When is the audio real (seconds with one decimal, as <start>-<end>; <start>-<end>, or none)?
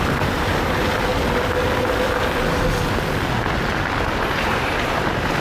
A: 1.1-4.2